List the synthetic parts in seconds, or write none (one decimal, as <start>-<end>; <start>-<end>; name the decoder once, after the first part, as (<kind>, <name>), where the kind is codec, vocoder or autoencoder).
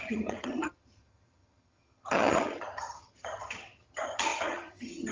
0.0-5.1 (vocoder, HiFi-GAN)